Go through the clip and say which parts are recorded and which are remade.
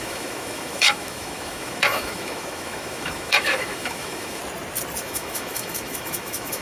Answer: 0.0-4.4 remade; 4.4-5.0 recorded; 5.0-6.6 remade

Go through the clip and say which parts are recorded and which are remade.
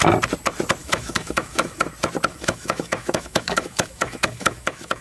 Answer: 0.0-0.8 recorded; 0.8-1.8 remade; 1.8-2.3 recorded; 2.3-5.0 remade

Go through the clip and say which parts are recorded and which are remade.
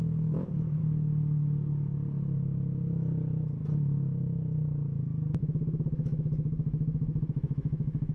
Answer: 0.0-0.8 remade; 0.8-5.4 recorded; 5.4-8.1 remade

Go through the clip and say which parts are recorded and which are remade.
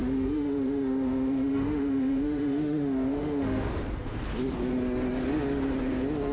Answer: 0.0-3.8 remade; 3.8-6.3 recorded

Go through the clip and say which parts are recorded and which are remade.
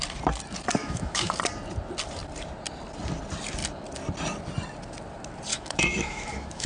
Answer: 0.0-0.8 recorded; 0.8-1.3 remade; 1.3-5.5 recorded; 5.5-6.7 remade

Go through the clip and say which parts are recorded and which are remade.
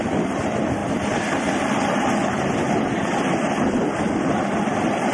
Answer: 0.0-5.1 recorded